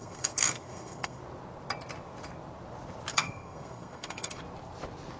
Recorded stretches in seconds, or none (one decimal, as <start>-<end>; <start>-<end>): 1.2-3.1; 4.4-5.2